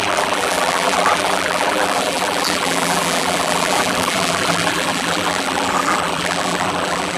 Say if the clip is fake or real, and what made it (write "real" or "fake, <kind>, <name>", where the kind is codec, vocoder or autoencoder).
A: fake, vocoder, BigVGAN v2